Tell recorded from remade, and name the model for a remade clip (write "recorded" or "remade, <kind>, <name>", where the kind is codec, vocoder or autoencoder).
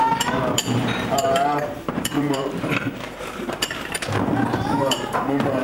remade, vocoder, BigVGAN v2